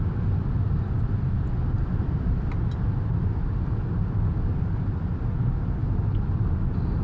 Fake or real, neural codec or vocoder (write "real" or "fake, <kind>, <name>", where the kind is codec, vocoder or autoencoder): real